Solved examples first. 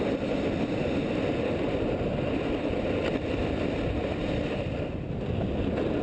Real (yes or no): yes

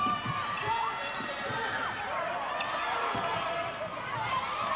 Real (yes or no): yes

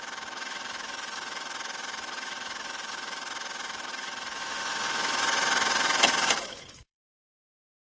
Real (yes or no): no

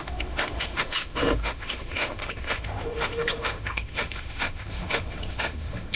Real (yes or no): no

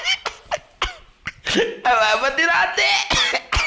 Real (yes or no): yes